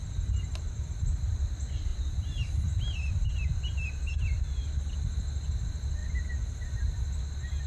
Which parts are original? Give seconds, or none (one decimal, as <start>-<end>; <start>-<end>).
0.5-1.9; 3.1-7.7